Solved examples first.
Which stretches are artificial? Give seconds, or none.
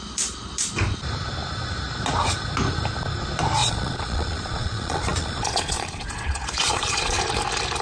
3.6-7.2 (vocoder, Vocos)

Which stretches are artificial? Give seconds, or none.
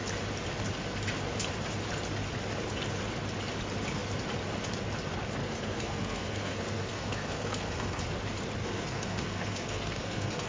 5.4-8.0 (codec, SNAC); 8.6-10.5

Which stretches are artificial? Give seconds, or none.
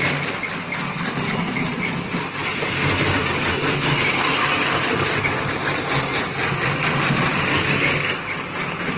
7.3-8.1 (codec, DAC)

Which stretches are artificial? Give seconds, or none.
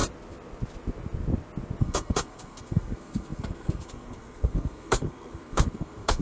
1.8-6.2 (codec, SNAC)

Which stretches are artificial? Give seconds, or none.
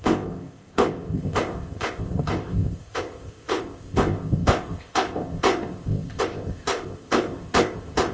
0.0-8.1 (codec, ZipCodec)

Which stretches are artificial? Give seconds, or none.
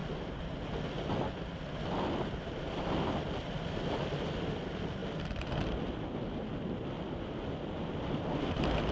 none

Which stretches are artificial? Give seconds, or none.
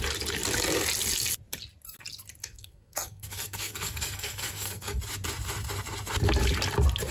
2.4-5.0 (codec, SNAC)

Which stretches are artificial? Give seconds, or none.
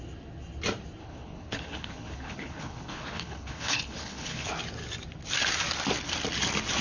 1.0-4.5 (codec, HILCodec)